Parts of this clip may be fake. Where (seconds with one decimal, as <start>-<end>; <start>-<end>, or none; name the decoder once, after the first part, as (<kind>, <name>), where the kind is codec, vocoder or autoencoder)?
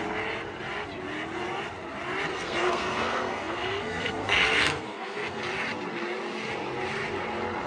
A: 2.3-5.4 (codec, SNAC)